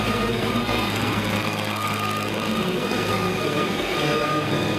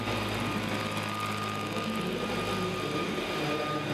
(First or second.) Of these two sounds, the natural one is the second